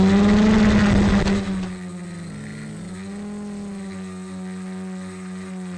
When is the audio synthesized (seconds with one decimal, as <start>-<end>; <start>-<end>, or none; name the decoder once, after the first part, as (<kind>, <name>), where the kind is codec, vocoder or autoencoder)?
none